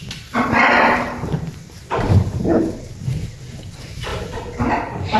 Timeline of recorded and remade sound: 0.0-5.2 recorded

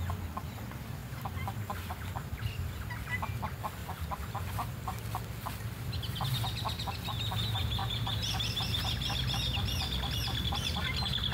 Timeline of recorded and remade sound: 0.0-1.0 recorded; 1.0-2.7 remade; 2.7-3.8 recorded; 3.8-5.0 remade; 5.0-7.8 recorded; 7.8-8.8 remade; 8.8-11.3 recorded

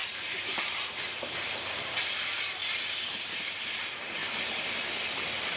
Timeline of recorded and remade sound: 0.0-0.6 recorded; 0.6-2.6 remade; 2.6-3.3 recorded; 3.3-4.2 remade; 4.2-5.6 recorded

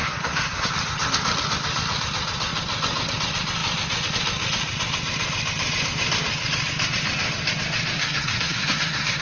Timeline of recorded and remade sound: 0.0-0.7 remade; 0.7-8.0 recorded; 8.0-9.2 remade

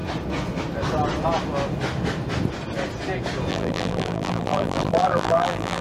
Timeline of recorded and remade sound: 0.0-3.5 recorded; 3.5-5.8 remade

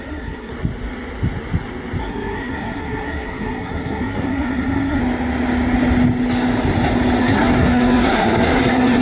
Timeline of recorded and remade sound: 0.0-0.5 remade; 0.5-2.0 recorded; 2.0-5.0 remade; 5.0-7.2 recorded; 7.2-9.0 remade